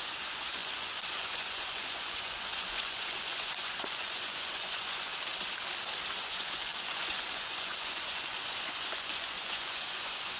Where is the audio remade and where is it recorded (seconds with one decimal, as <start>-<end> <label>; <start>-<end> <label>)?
0.0-5.1 remade; 5.1-6.1 recorded; 6.1-10.4 remade